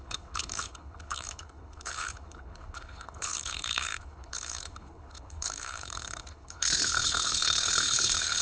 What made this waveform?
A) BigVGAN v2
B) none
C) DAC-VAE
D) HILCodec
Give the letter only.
D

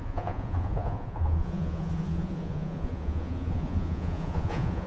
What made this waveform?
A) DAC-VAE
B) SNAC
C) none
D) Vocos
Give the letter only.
D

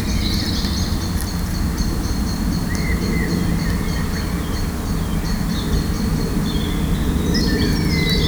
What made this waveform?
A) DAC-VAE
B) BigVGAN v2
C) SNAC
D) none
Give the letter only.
D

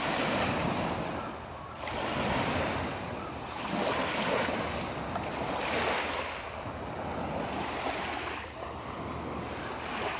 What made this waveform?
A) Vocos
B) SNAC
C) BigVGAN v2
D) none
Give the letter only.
D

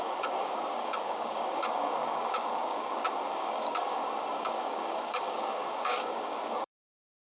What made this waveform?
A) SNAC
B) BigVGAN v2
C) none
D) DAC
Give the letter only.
D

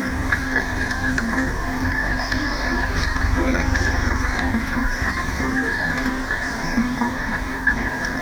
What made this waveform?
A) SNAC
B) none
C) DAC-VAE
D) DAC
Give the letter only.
D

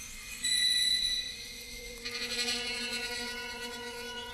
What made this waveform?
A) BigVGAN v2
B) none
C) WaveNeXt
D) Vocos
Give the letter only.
D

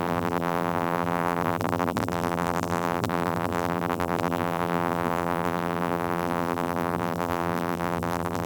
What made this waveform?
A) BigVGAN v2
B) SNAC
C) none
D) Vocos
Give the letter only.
A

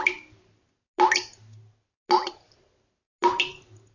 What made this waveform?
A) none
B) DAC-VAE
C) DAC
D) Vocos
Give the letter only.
A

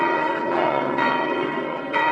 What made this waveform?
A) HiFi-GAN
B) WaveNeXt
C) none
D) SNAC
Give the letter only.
B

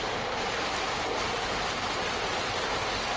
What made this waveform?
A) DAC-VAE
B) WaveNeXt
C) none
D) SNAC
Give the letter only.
C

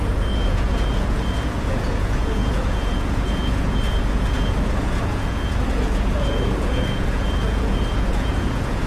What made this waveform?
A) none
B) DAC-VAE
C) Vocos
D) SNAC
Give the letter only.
C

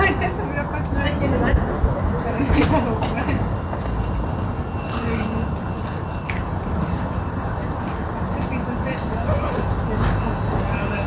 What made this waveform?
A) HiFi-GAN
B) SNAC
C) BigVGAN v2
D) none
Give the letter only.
D